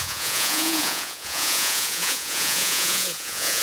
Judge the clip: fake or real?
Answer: fake